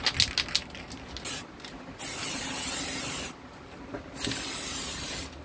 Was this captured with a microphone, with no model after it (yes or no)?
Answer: yes